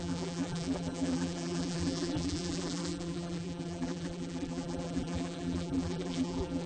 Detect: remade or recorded remade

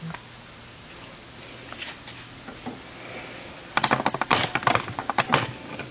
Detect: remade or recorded recorded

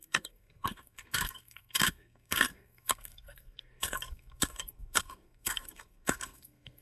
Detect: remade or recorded remade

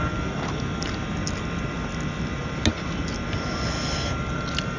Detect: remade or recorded recorded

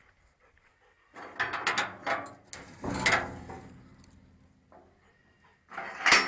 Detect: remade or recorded recorded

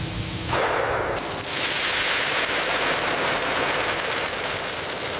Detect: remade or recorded recorded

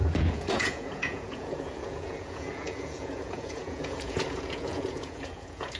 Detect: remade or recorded remade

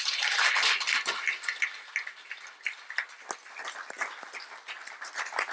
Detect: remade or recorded recorded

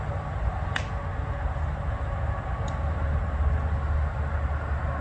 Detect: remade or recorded recorded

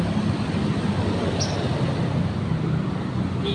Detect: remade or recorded recorded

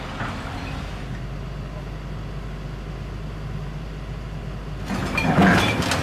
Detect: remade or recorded recorded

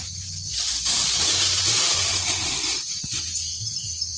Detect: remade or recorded recorded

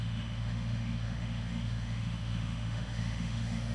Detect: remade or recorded remade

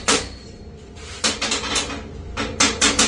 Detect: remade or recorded recorded